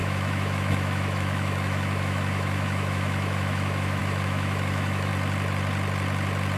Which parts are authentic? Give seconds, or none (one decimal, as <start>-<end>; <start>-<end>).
5.1-6.6